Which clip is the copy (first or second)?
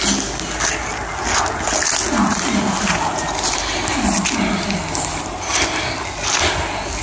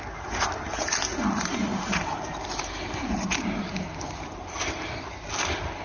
second